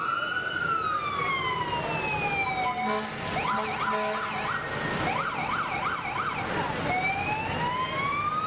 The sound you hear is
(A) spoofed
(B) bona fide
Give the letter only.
B